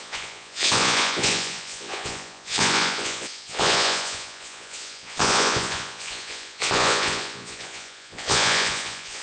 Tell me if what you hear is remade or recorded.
remade